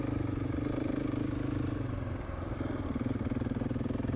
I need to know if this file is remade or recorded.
recorded